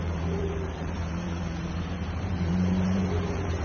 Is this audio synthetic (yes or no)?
yes